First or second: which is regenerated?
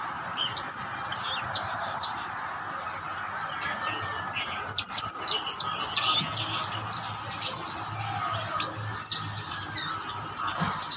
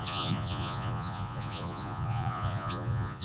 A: second